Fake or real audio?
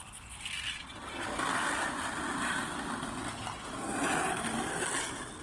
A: real